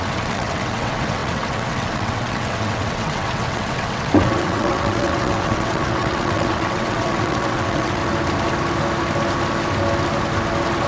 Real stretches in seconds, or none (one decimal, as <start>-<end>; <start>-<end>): 8.0-10.9